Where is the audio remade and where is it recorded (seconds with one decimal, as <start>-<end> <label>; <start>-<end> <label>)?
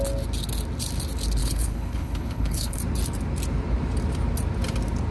0.0-1.4 recorded; 1.4-2.8 remade; 2.8-5.1 recorded